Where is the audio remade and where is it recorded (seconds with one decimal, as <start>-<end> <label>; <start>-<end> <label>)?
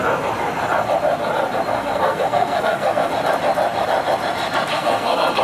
0.0-1.7 recorded; 1.7-3.1 remade; 3.1-4.7 recorded; 4.7-5.4 remade